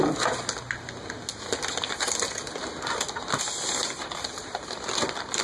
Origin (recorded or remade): recorded